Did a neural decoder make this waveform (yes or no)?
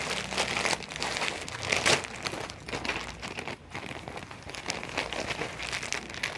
no